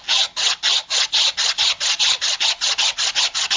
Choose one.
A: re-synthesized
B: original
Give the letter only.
B